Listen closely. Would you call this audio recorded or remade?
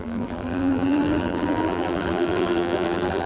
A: remade